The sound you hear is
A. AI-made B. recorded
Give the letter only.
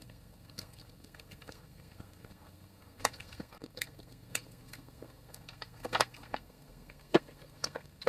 A